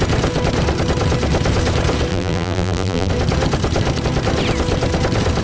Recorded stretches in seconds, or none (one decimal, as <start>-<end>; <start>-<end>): 0.0-2.1; 3.1-5.4